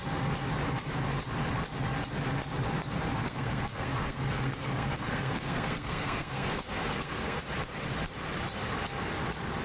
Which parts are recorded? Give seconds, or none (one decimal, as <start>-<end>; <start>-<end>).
0.0-3.2; 7.4-9.6